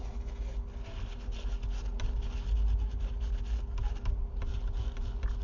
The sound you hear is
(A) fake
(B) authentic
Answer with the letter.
B